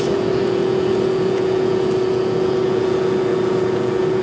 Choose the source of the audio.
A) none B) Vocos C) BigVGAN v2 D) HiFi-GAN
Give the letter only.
B